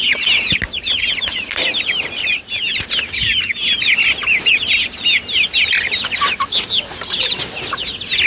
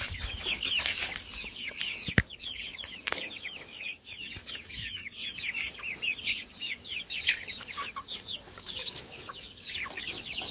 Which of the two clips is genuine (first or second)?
first